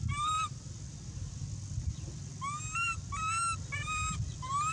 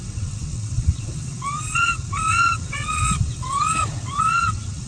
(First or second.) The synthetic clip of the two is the second